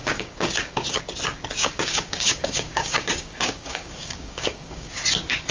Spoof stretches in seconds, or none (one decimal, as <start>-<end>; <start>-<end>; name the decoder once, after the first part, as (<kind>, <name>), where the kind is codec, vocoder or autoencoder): 0.0-1.0 (codec, DAC); 1.6-4.9